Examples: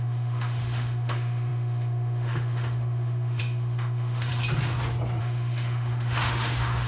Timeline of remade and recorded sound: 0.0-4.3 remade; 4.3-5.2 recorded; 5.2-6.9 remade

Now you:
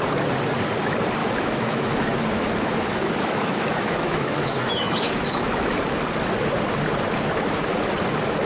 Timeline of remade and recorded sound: 0.0-1.2 recorded; 1.2-5.8 remade; 5.8-8.5 recorded